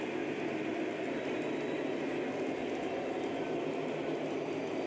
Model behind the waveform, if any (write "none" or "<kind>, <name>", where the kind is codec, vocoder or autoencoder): none